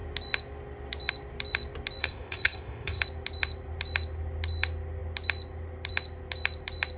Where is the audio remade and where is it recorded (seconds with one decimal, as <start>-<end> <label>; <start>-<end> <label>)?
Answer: 0.0-2.0 recorded; 2.0-3.0 remade; 3.0-7.0 recorded